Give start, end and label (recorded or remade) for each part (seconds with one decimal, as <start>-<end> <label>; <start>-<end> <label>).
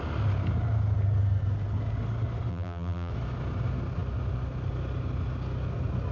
0.0-2.5 recorded; 2.5-3.1 remade; 3.1-6.1 recorded